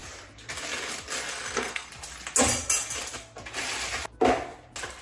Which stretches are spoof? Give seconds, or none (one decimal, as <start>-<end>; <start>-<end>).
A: 1.3-1.9